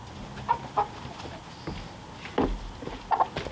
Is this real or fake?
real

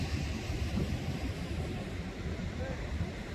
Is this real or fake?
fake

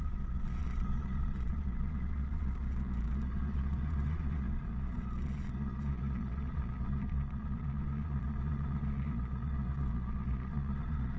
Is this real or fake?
fake